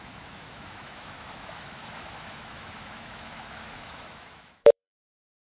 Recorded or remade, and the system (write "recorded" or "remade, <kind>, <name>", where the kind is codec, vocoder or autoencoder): remade, autoencoder, DAC-VAE